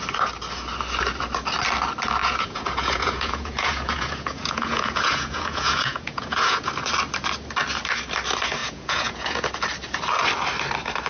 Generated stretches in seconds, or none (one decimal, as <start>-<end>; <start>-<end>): 2.2-6.7; 8.6-9.5